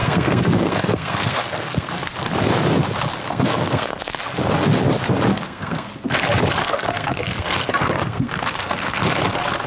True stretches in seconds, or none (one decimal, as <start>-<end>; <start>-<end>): 1.9-3.2; 4.0-5.3; 5.9-6.6; 9.0-9.7